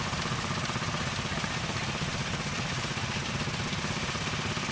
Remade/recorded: recorded